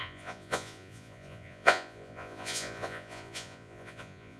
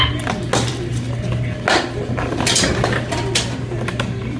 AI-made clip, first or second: first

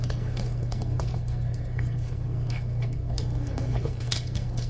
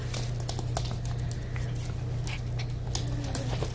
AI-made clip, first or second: first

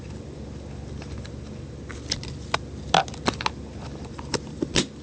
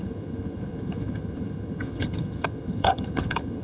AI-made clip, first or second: second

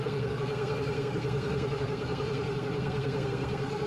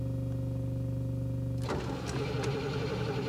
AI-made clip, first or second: first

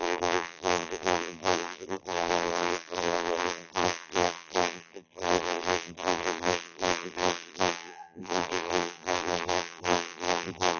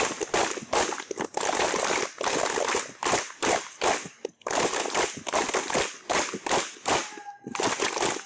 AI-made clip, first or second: first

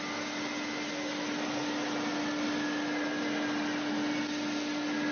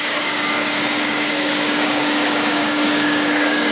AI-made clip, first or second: second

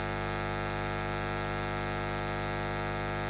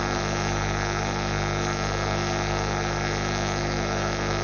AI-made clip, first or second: second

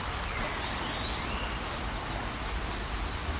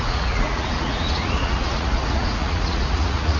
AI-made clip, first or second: second